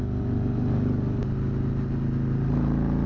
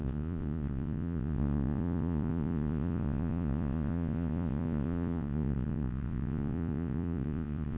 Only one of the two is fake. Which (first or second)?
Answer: second